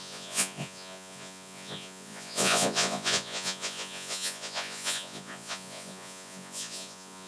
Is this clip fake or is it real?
fake